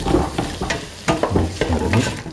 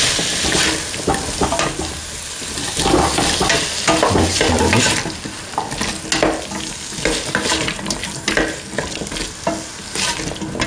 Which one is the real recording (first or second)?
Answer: second